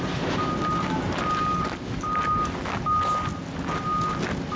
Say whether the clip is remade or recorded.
recorded